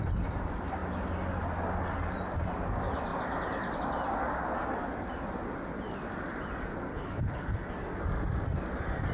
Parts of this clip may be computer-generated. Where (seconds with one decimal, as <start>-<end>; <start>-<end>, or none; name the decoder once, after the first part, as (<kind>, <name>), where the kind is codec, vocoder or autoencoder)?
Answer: 6.9-7.7 (codec, HILCodec)